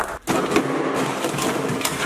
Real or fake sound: real